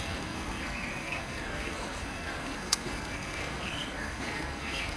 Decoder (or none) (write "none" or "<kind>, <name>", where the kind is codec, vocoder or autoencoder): codec, SNAC